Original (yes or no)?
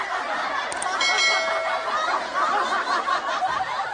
yes